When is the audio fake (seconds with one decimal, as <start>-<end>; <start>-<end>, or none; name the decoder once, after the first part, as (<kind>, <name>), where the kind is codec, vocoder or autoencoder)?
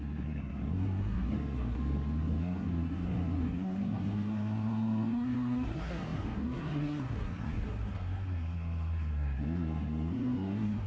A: 0.0-10.9 (codec, SNAC)